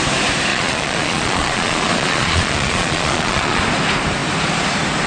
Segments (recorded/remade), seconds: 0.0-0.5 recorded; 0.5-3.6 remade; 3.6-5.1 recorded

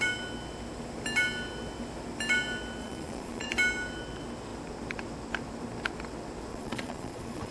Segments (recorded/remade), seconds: 0.0-2.8 recorded; 2.8-3.5 remade; 3.5-6.5 recorded; 6.5-7.5 remade

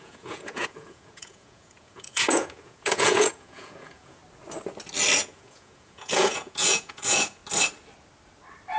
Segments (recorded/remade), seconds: 0.0-4.2 remade; 4.2-5.2 recorded; 5.2-7.4 remade; 7.4-8.8 recorded

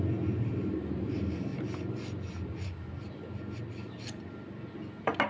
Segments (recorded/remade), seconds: 0.0-5.3 recorded

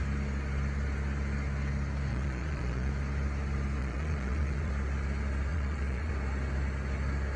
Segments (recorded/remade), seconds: 0.0-2.1 recorded; 2.1-2.9 remade; 2.9-3.8 recorded; 3.8-4.7 remade; 4.7-5.5 recorded; 5.5-6.1 remade; 6.1-7.4 recorded

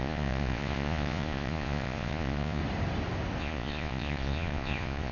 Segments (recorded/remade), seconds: 0.0-2.6 remade; 2.6-3.4 recorded; 3.4-5.1 remade